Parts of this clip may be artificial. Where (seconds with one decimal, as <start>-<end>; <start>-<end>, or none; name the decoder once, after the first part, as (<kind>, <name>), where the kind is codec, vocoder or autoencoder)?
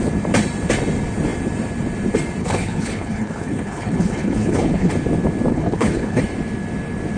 2.4-4.9 (codec, HILCodec); 5.5-6.2